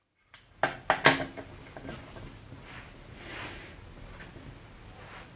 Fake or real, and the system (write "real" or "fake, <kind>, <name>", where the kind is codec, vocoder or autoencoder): real